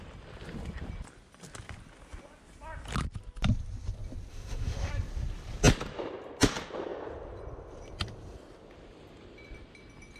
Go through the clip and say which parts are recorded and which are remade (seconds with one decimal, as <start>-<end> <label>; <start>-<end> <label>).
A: 0.0-4.3 recorded; 4.3-4.9 remade; 4.9-10.2 recorded